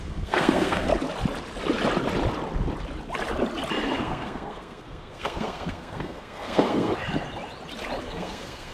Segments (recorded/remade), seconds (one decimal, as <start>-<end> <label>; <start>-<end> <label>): 0.0-0.9 remade; 0.9-4.0 recorded; 4.0-6.9 remade; 6.9-8.0 recorded; 8.0-8.7 remade